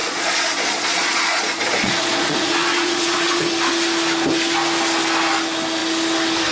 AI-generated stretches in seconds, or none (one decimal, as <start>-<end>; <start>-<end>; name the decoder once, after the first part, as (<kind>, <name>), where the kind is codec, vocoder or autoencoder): 0.0-3.5 (vocoder, Vocos)